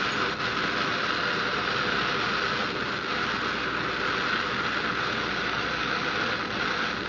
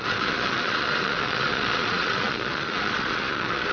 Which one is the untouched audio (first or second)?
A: first